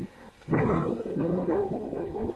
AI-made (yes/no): yes